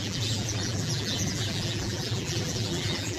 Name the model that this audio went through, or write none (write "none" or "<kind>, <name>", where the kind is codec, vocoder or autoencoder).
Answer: vocoder, BigVGAN v2